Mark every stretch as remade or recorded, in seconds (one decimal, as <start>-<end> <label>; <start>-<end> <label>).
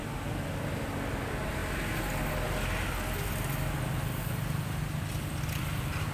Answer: 0.0-6.1 recorded